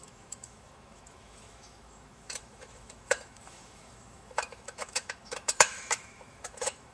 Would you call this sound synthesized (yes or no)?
yes